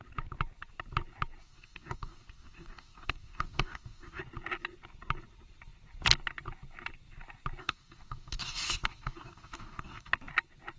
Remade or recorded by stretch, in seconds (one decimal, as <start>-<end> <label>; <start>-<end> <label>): 0.0-1.4 recorded; 1.4-4.2 remade; 4.2-7.6 recorded; 7.6-10.1 remade; 10.1-10.8 recorded